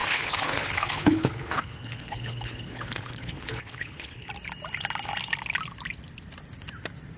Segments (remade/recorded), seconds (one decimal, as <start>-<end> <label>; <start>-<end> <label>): 0.0-4.3 remade; 4.3-7.2 recorded